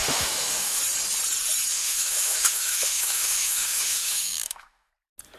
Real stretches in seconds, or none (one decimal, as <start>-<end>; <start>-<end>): 0.8-1.7; 4.9-5.4